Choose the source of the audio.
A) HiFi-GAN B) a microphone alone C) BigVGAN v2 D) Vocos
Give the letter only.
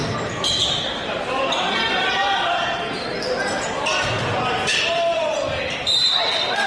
C